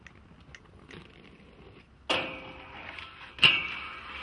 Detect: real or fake real